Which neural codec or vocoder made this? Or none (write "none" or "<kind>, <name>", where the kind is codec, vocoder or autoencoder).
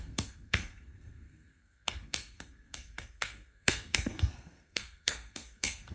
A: codec, SNAC